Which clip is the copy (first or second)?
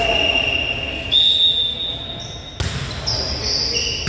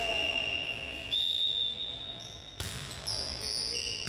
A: second